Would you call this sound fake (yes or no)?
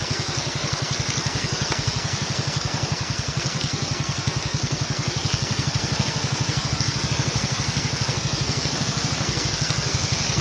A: yes